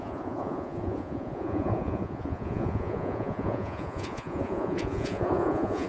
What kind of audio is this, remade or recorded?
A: remade